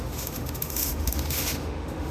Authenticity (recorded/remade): remade